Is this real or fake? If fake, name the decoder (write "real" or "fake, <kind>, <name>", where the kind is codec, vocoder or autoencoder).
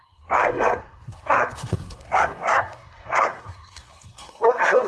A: fake, codec, SNAC